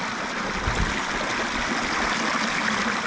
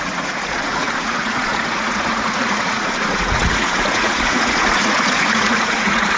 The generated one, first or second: second